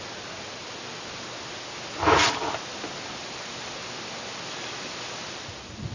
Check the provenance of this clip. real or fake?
real